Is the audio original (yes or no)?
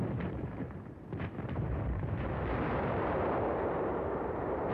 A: no